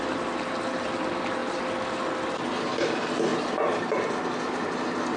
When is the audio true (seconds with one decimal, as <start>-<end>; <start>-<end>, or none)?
0.0-5.2